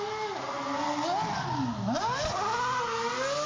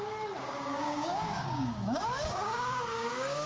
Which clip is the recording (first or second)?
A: first